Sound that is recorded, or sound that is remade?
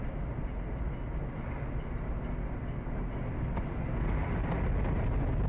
recorded